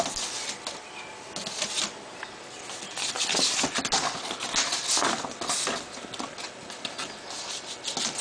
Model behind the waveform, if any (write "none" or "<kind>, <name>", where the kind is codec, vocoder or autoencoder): none